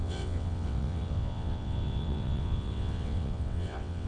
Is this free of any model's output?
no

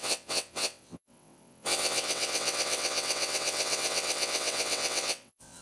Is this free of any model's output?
no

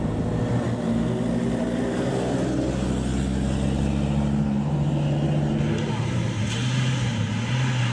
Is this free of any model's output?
yes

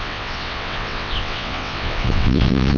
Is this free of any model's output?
no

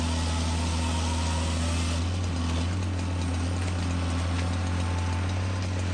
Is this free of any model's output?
yes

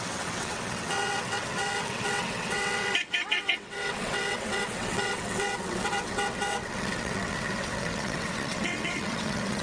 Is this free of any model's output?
no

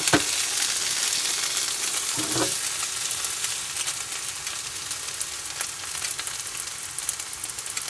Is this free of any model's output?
yes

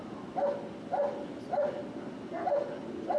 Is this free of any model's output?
yes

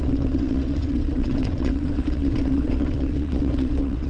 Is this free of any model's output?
no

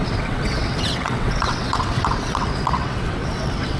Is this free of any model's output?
no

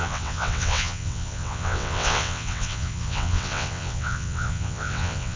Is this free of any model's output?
no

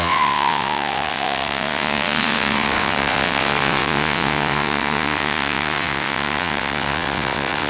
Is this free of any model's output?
no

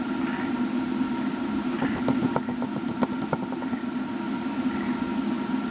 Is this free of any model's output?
yes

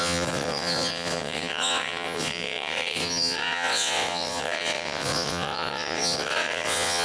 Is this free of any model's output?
no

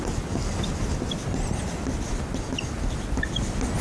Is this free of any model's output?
yes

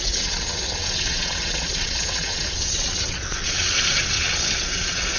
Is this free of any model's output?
no